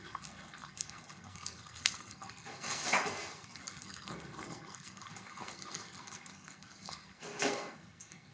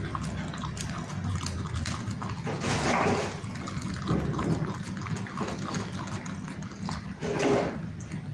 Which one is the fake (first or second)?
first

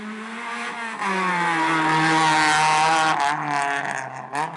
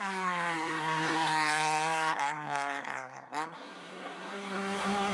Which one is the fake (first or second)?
second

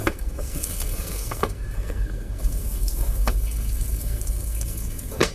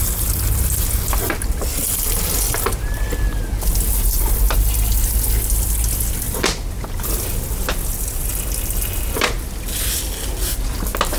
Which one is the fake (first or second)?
first